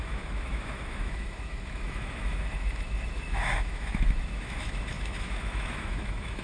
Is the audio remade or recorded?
remade